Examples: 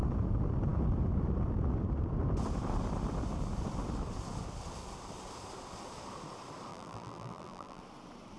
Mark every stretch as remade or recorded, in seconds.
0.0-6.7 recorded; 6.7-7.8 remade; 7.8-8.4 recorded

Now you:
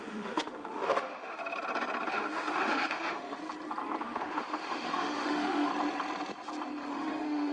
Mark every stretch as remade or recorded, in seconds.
0.0-1.4 remade; 1.4-2.1 recorded; 2.1-3.4 remade; 3.4-4.0 recorded; 4.0-5.7 remade; 5.7-6.9 recorded; 6.9-7.5 remade

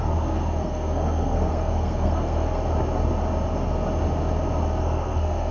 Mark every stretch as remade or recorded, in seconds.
0.0-2.6 remade; 2.6-4.8 recorded; 4.8-5.5 remade